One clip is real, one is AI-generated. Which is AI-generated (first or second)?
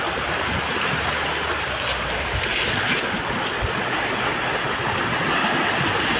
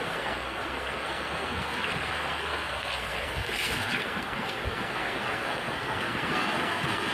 second